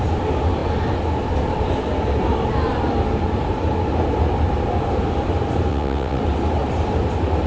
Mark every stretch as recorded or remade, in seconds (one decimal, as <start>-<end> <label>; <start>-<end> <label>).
0.0-5.7 recorded; 5.7-6.2 remade; 6.2-7.5 recorded